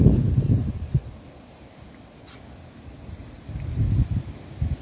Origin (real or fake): real